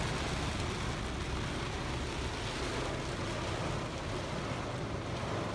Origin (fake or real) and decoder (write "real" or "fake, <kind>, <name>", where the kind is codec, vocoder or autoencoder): real